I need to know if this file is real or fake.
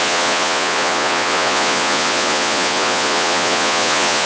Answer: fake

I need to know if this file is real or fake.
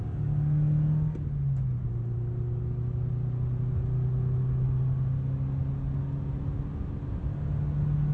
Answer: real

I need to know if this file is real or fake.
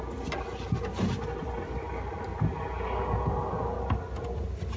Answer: real